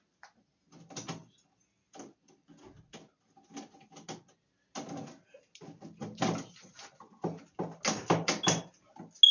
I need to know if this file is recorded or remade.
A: recorded